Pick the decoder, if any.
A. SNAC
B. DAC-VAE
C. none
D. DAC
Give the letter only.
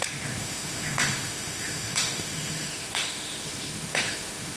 B